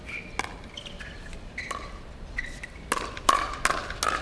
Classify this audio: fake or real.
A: real